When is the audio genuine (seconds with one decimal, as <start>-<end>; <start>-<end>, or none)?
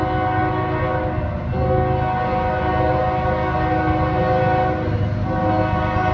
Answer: 0.0-6.1